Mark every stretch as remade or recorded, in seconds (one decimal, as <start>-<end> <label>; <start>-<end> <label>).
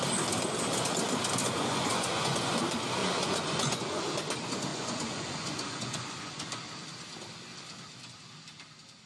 0.0-1.4 recorded; 1.4-2.5 remade; 2.5-3.0 recorded; 3.0-4.0 remade; 4.0-4.7 recorded; 4.7-6.6 remade; 6.6-9.1 recorded